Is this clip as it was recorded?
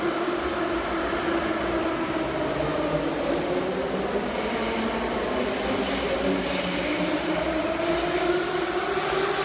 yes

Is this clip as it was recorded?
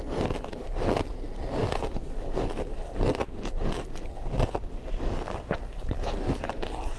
yes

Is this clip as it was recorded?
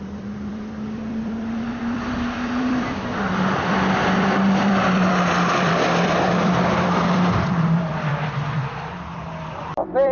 no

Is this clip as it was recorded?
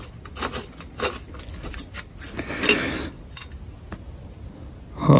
yes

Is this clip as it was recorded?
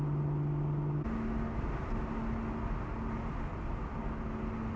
yes